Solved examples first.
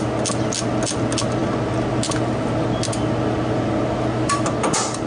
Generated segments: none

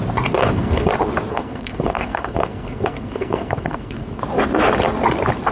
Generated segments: 0.4-0.9 (codec, SNAC); 1.3-4.2

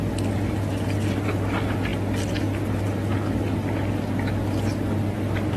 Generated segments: none

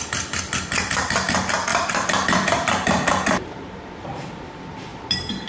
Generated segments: 1.7-4.2 (vocoder, BigVGAN v2); 4.9-5.5

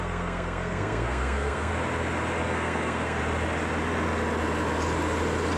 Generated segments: 0.0-1.7 (codec, SNAC); 2.4-3.2